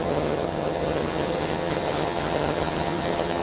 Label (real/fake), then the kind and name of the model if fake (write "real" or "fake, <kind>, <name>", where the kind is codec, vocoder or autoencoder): fake, vocoder, HiFi-GAN